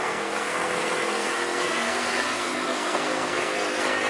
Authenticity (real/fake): fake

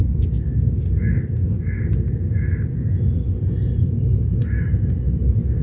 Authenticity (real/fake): real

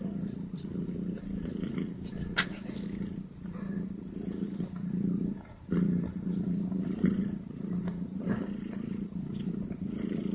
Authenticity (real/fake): real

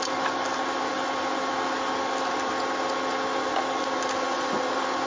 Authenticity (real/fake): real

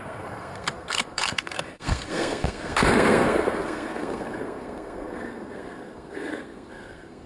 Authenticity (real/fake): fake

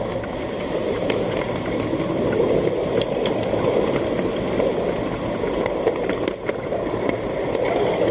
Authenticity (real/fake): real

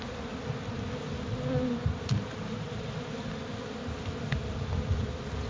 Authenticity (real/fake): real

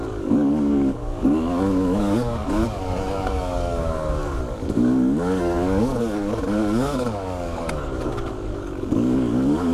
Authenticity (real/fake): fake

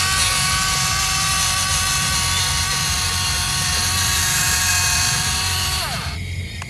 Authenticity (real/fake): real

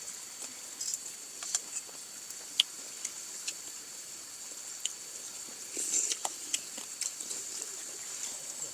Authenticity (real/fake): real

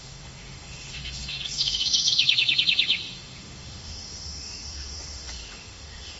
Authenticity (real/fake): fake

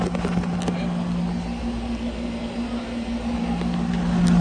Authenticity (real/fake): real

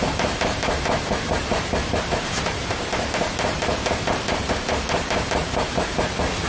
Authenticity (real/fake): fake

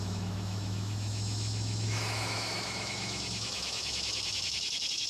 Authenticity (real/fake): fake